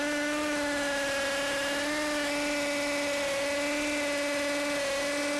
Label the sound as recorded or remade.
recorded